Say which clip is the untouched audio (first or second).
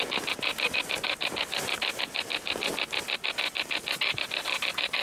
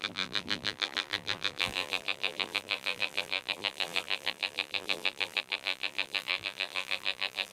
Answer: first